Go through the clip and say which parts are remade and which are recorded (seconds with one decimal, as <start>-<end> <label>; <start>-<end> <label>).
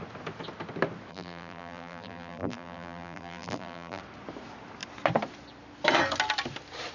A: 0.0-1.1 recorded; 1.1-4.0 remade; 4.0-6.9 recorded